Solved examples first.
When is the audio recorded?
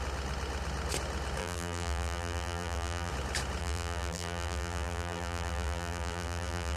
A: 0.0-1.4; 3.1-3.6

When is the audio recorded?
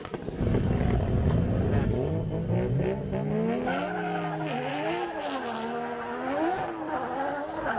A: 0.0-7.8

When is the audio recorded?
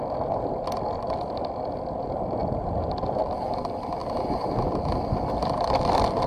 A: 0.0-6.3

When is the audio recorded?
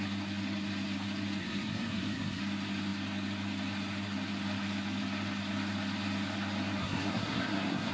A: 0.0-1.4; 2.4-6.8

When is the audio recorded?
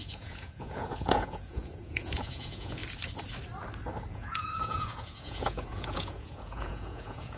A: 2.8-4.1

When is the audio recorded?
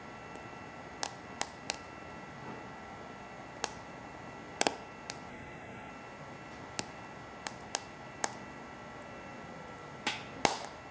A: 0.0-5.3; 5.9-10.9